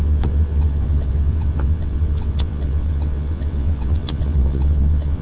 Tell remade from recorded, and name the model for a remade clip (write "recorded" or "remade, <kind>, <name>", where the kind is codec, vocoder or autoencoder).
remade, vocoder, WaveNeXt